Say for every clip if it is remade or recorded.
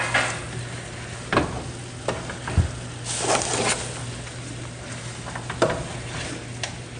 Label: recorded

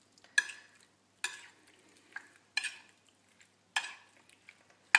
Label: recorded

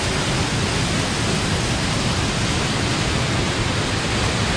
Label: recorded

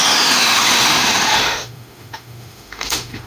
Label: remade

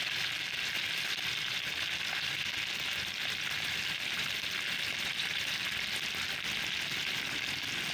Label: recorded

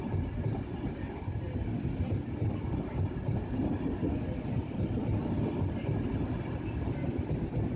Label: recorded